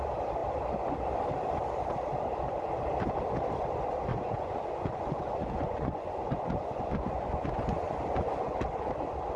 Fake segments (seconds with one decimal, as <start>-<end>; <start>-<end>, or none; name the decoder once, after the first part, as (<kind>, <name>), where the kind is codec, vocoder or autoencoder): 4.1-8.6 (vocoder, Vocos)